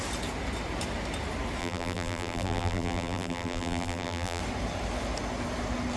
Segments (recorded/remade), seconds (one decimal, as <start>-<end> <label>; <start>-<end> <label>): 0.0-1.6 recorded; 1.6-4.4 remade; 4.4-6.0 recorded